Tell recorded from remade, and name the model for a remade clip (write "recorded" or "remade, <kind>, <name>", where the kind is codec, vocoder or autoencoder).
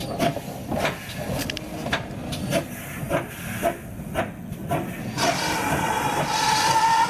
recorded